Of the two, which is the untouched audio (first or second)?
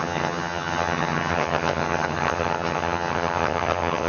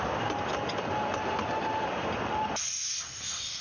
second